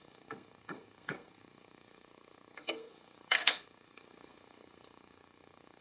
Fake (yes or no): yes